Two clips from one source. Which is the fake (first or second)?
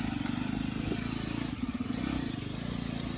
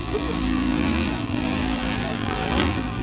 second